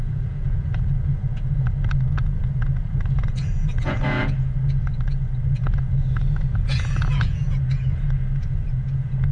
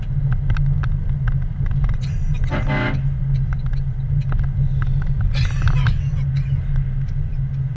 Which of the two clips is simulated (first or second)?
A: first